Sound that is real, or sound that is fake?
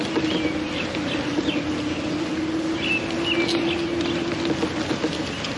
real